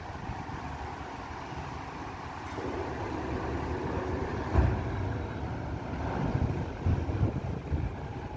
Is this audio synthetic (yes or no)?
no